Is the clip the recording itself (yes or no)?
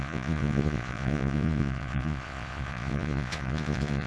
no